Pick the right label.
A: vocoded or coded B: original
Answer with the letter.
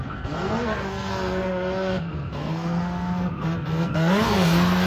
A